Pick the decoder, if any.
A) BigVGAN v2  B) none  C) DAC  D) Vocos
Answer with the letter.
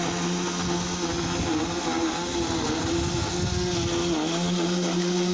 B